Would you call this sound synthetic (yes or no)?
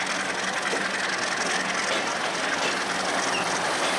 no